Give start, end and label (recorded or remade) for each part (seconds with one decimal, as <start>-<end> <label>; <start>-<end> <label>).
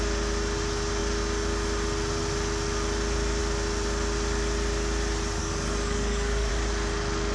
0.0-5.4 recorded; 5.4-6.5 remade; 6.5-7.3 recorded